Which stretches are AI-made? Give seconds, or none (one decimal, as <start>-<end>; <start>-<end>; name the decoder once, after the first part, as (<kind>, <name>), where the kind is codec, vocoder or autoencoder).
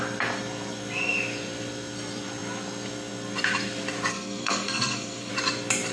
4.1-5.3 (codec, SNAC)